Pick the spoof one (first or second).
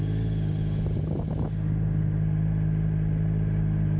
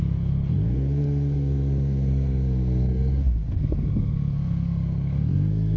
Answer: second